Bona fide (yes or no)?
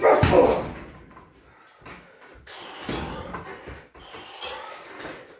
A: yes